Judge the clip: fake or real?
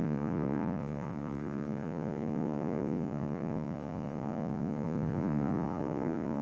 fake